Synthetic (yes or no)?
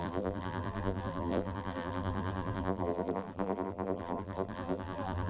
yes